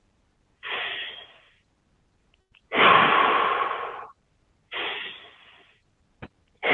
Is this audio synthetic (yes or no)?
no